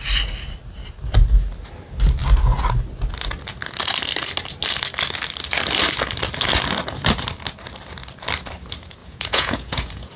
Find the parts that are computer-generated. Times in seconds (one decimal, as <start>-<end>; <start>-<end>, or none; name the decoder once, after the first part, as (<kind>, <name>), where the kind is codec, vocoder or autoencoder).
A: 9.0-10.2 (vocoder, Vocos)